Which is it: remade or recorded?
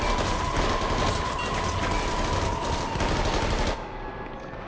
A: recorded